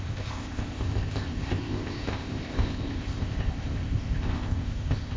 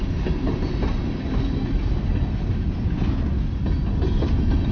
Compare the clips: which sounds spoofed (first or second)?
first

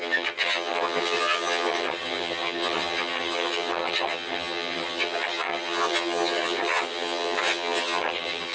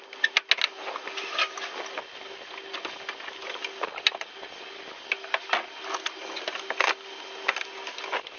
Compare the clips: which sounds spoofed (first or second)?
first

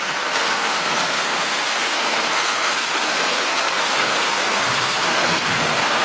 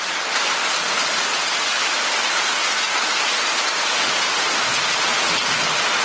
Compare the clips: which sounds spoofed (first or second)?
first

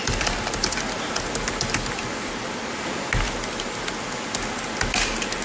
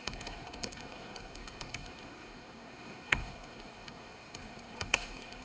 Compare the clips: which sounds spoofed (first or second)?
second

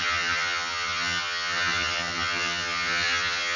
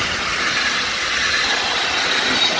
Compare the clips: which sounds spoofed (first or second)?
first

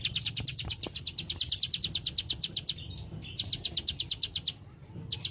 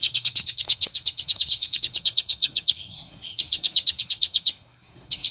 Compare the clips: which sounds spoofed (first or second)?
second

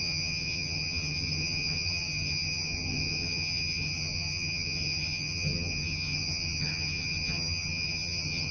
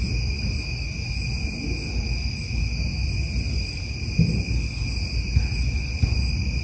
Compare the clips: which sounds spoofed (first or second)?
first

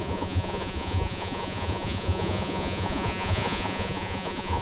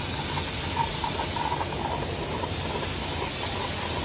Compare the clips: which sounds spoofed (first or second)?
first